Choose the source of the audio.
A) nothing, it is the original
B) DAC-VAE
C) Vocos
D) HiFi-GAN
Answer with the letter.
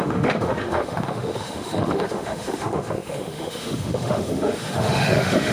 B